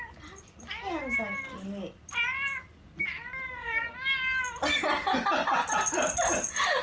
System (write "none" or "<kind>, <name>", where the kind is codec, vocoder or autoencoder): none